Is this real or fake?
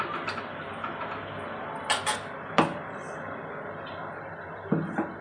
real